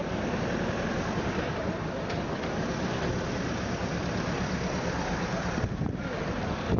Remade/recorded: recorded